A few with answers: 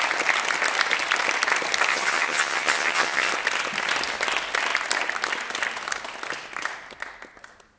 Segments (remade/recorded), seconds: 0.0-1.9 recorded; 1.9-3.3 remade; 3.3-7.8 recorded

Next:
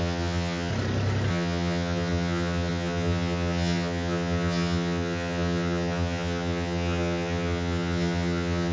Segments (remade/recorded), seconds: 0.0-0.7 remade; 0.7-1.3 recorded; 1.3-8.7 remade

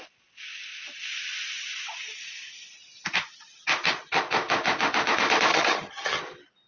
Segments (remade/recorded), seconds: 0.0-5.5 recorded; 5.5-6.2 remade; 6.2-6.7 recorded

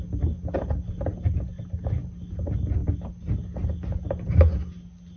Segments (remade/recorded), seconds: 0.0-5.2 recorded

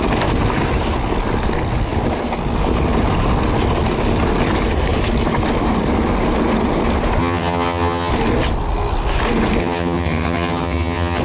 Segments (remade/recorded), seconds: 0.0-7.2 recorded; 7.2-8.1 remade; 8.1-9.6 recorded; 9.6-11.2 remade

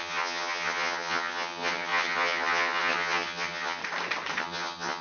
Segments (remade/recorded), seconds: 0.0-3.8 remade; 3.8-4.4 recorded; 4.4-5.0 remade

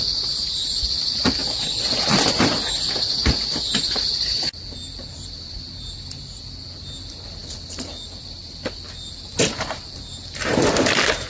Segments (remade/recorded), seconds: 0.0-11.3 recorded

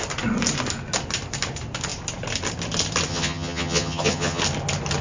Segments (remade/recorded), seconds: 0.0-3.1 recorded; 3.1-4.4 remade; 4.4-5.0 recorded